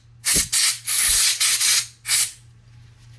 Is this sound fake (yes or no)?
no